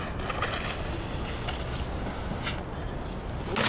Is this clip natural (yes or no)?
yes